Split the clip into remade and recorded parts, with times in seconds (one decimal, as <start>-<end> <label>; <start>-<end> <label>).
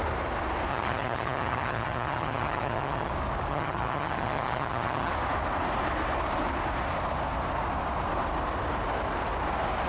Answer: 0.0-0.7 recorded; 0.7-3.1 remade; 3.1-3.5 recorded; 3.5-5.1 remade; 5.1-9.9 recorded